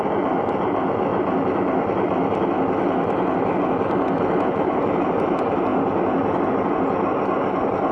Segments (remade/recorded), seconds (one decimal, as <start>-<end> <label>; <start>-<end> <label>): 0.0-7.9 recorded

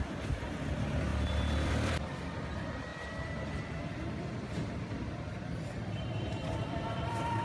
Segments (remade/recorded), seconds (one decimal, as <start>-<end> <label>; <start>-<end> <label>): 0.0-2.9 remade; 2.9-3.8 recorded; 3.8-7.4 remade